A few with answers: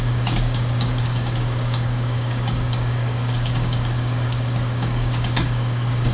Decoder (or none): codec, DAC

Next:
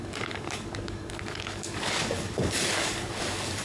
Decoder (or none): codec, DAC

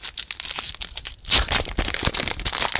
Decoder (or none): none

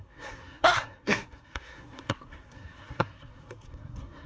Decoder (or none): codec, SNAC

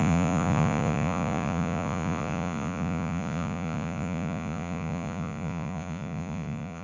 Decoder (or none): vocoder, Vocos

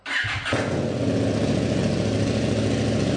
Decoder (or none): none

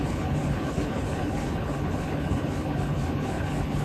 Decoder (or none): codec, HILCodec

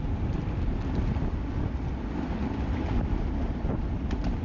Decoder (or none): none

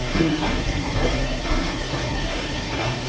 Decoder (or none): codec, SNAC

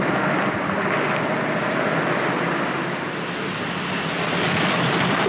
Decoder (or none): none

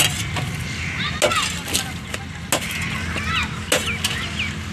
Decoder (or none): none